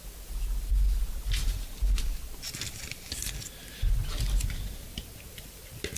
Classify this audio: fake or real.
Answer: real